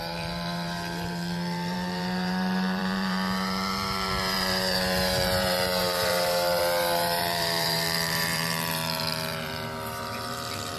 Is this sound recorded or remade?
remade